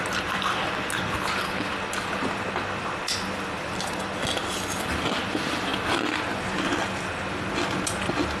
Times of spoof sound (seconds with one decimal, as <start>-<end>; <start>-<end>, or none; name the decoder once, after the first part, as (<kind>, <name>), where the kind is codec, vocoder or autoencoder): none